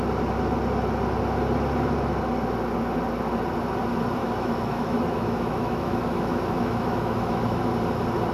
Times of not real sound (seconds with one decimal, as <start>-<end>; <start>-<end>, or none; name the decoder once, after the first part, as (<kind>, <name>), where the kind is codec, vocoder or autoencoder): 4.2-7.6 (autoencoder, DAC-VAE)